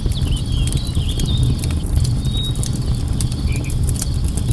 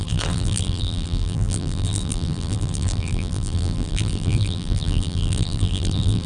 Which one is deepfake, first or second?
second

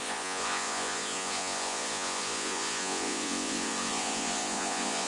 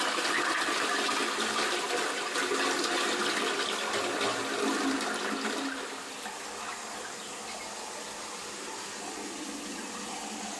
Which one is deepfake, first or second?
first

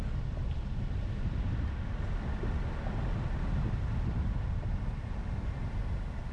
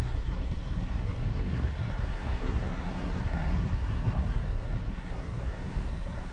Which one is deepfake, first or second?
second